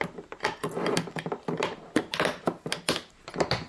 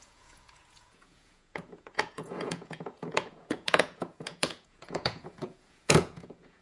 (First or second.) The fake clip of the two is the second